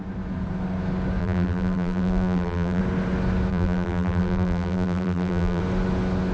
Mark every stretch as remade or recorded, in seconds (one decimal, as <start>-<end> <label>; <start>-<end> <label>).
0.0-1.2 recorded; 1.2-2.8 remade; 2.8-3.5 recorded; 3.5-5.6 remade; 5.6-6.3 recorded